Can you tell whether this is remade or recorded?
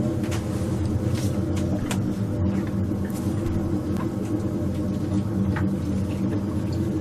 recorded